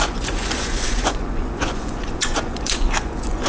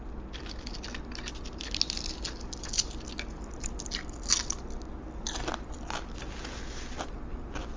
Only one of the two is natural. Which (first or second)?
second